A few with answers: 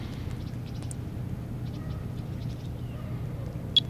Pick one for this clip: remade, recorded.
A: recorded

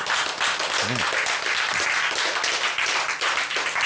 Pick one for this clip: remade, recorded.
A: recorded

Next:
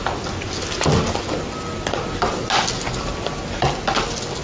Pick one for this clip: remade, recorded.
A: recorded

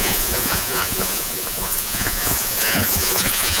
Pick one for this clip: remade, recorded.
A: remade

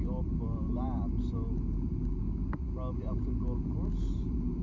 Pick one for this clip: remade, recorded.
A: recorded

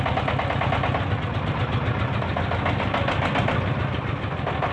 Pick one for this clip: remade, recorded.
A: recorded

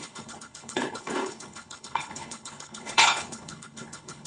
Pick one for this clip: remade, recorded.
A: remade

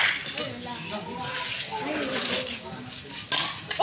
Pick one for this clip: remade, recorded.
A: recorded